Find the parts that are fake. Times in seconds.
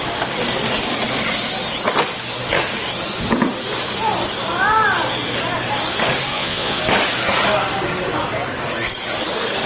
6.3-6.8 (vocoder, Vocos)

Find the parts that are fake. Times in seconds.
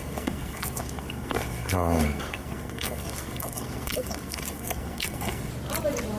0.0-5.5 (codec, SNAC)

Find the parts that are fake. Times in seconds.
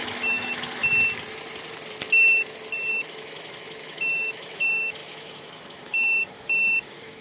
0.0-0.8 (autoencoder, DAC-VAE); 2.9-7.2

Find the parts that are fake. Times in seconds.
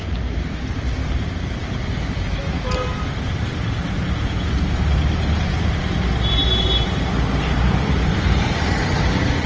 1.0-3.5 (vocoder, BigVGAN v2); 8.1-8.8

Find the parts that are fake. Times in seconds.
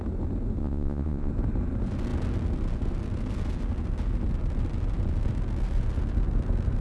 0.6-1.3 (vocoder, Vocos)